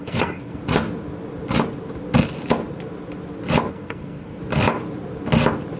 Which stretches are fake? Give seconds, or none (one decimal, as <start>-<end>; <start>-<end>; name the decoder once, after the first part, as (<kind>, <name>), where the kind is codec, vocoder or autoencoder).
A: 0.0-0.6 (codec, SNAC); 3.7-4.4